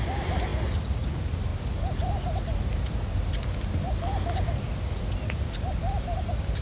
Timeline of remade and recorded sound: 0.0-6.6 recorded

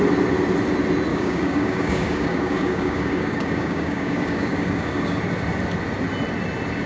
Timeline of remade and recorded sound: 0.0-1.1 recorded; 1.1-5.2 remade; 5.2-6.9 recorded